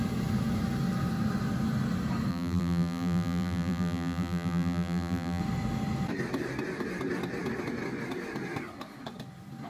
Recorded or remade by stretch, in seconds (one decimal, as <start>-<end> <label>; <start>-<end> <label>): 0.0-2.3 recorded; 2.3-5.4 remade; 5.4-9.7 recorded